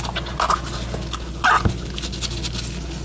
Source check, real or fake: real